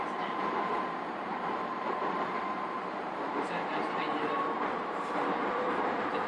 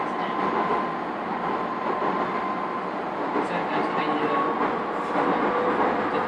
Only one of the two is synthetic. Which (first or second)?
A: first